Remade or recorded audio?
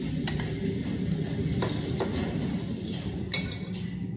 recorded